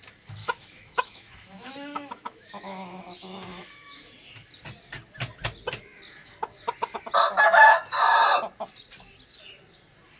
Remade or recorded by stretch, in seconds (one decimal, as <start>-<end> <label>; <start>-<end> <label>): 0.0-0.4 recorded; 0.4-4.1 remade; 4.1-10.2 recorded